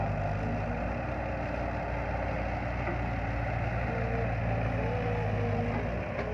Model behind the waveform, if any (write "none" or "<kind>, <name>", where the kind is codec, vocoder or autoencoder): none